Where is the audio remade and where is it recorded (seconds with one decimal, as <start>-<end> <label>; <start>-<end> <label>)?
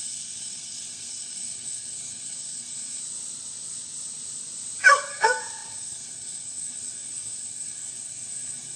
0.0-3.0 remade; 3.0-5.1 recorded; 5.1-8.8 remade